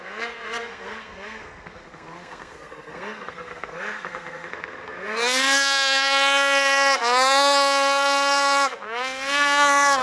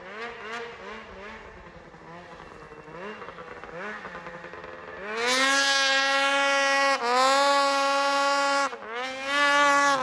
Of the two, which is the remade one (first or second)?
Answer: first